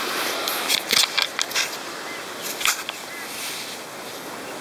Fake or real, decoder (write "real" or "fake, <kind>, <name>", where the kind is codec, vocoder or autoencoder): real